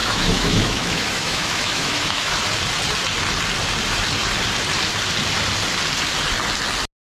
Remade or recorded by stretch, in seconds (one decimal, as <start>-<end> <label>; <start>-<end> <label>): 0.0-2.3 remade; 2.3-7.0 recorded